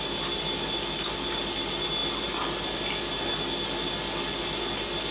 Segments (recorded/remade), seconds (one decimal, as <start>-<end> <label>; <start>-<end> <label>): 0.0-5.1 recorded